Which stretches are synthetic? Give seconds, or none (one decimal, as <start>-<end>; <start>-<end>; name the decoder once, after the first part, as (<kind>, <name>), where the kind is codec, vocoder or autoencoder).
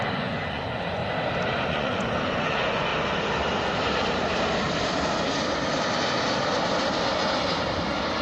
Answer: 0.0-1.0 (vocoder, Vocos); 1.7-2.9